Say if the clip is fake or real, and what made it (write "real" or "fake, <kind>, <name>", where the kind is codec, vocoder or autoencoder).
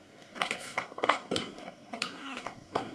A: fake, codec, SNAC